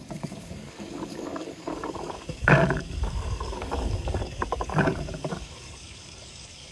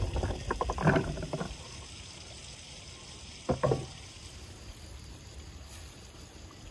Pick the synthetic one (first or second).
first